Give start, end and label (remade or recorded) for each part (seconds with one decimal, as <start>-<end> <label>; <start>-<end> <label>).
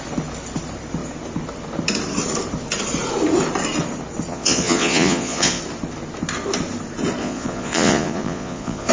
0.0-4.3 recorded; 4.3-5.6 remade; 5.6-7.2 recorded; 7.2-8.9 remade